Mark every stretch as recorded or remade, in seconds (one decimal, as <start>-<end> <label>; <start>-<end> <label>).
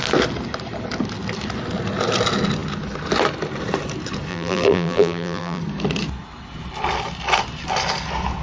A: 0.0-4.3 recorded; 4.3-5.6 remade; 5.6-8.4 recorded